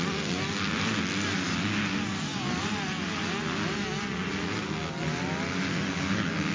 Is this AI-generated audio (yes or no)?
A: no